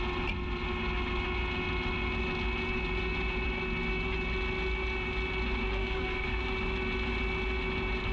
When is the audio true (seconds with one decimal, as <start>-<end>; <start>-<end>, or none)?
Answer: 0.0-5.8; 6.4-8.1